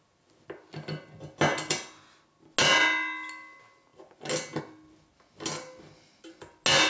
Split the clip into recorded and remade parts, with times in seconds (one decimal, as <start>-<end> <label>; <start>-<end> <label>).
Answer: 0.0-6.9 recorded